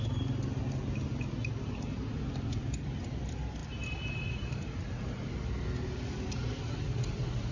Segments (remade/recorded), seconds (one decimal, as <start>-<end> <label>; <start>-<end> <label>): 0.0-7.5 recorded